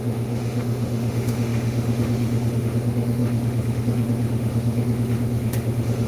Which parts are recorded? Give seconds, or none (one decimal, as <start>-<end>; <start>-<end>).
none